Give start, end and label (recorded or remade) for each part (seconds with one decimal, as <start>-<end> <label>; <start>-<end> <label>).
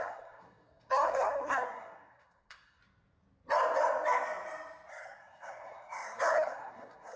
0.0-2.8 remade; 2.8-4.9 recorded; 4.9-7.2 remade